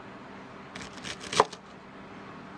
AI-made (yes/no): no